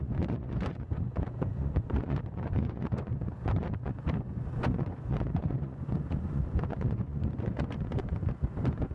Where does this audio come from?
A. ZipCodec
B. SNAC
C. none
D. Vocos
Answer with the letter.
D